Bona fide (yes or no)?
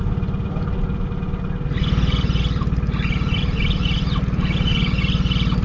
yes